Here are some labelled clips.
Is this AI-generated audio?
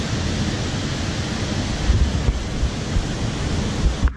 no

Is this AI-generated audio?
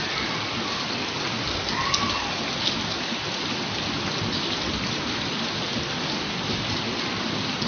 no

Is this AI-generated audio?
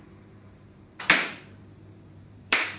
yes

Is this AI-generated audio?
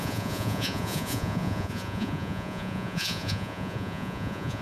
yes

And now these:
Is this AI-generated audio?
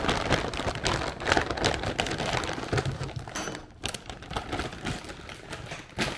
no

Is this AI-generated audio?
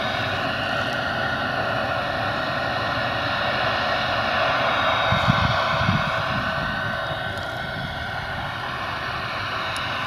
no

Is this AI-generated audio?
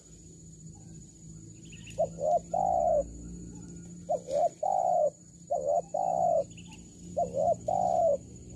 no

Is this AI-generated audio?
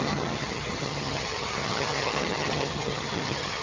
yes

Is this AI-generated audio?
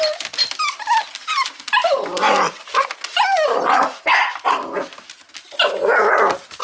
no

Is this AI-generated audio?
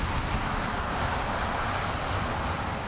no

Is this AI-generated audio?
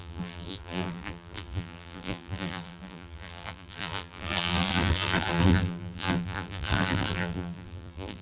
yes